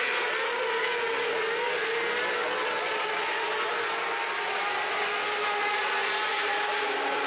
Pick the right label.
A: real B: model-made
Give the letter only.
A